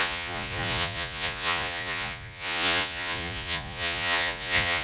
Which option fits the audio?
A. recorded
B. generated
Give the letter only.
B